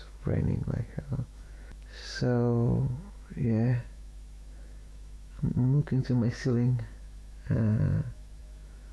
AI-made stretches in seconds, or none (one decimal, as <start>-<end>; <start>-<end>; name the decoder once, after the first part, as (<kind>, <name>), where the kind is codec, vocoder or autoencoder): 0.0-2.0 (autoencoder, DAC-VAE); 2.8-8.9